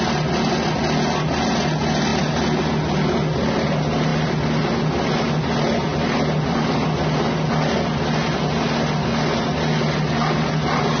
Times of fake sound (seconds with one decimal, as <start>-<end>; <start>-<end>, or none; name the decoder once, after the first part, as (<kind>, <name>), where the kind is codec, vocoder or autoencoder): none